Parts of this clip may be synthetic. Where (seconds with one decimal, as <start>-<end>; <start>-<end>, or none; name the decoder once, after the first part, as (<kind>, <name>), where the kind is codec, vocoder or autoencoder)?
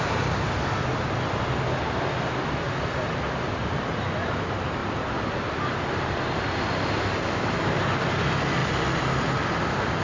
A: none